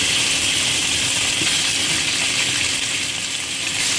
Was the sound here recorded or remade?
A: recorded